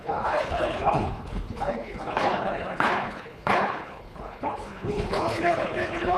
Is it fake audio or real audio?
fake